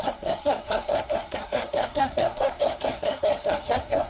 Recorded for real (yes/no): no